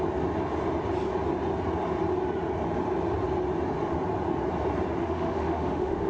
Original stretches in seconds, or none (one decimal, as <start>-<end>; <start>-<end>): 0.0-5.0